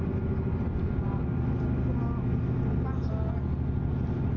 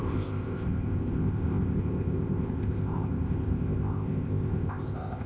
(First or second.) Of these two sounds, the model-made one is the second